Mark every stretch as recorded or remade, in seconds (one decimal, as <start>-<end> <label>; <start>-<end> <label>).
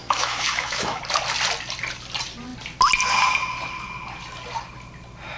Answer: 0.0-1.0 remade; 1.0-5.4 recorded